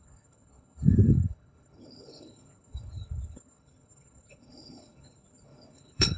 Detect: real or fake fake